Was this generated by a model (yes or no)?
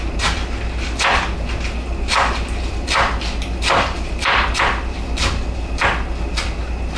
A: no